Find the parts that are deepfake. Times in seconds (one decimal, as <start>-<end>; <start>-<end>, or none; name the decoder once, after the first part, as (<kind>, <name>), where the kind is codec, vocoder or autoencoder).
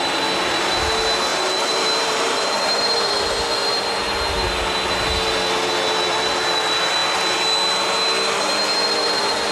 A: 1.3-2.8 (vocoder, BigVGAN v2)